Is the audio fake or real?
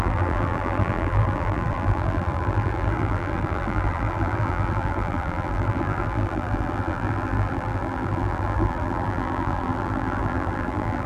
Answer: fake